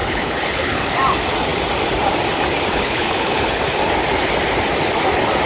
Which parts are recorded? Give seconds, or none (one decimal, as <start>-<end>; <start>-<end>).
0.8-2.7; 3.6-5.5